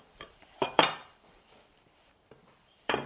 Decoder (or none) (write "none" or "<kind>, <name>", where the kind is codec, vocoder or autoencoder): vocoder, BigVGAN v2